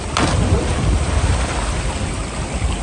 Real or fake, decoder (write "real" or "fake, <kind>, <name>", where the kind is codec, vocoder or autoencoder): real